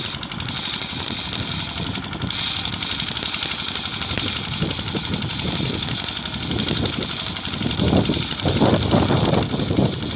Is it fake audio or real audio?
real